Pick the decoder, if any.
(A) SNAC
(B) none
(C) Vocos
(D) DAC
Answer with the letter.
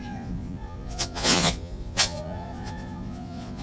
C